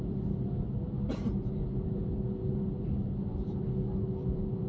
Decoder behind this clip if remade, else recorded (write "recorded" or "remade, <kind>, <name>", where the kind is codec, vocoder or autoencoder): recorded